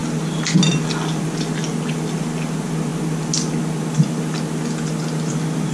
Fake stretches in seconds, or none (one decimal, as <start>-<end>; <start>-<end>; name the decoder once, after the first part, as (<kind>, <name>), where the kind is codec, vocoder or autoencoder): none